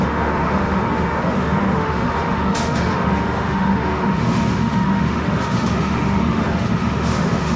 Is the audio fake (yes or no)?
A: yes